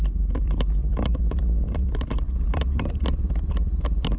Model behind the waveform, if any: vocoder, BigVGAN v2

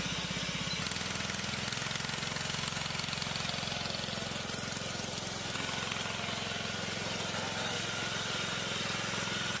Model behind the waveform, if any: none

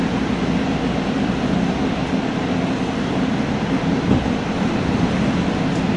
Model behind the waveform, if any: none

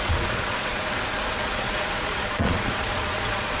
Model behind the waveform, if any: vocoder, Vocos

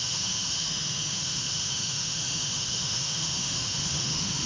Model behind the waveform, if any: autoencoder, DAC-VAE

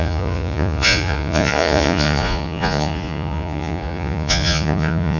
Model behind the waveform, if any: vocoder, Vocos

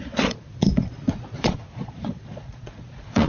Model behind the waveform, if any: vocoder, Vocos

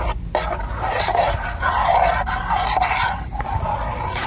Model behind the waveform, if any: none